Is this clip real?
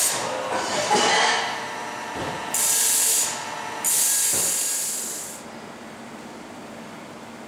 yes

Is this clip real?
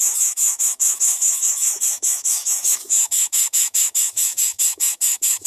no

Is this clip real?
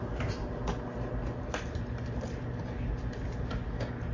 yes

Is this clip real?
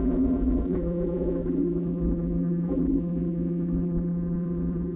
no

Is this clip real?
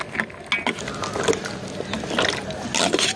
yes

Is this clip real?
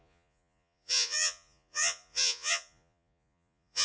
no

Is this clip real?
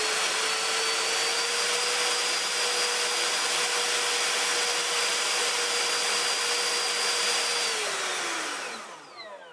yes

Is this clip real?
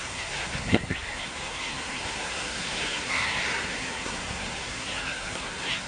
no